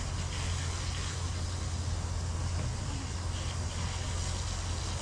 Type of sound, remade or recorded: recorded